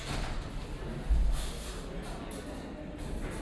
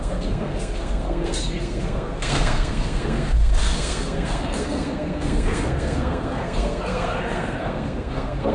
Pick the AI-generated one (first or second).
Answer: second